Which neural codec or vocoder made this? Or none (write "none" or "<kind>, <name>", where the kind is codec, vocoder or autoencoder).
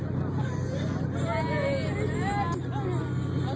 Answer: none